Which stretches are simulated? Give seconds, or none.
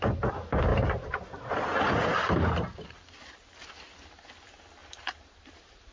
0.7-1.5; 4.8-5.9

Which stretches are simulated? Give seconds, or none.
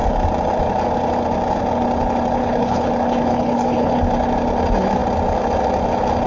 2.4-2.9; 3.3-4.0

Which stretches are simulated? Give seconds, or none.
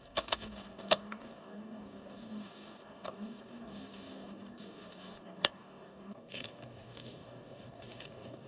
0.0-8.5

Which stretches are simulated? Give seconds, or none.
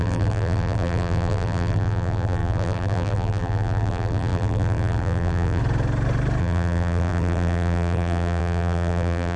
0.0-5.6; 6.4-9.4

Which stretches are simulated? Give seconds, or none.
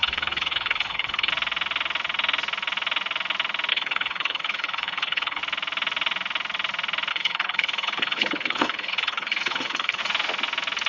0.0-1.3; 3.7-5.4; 7.1-10.0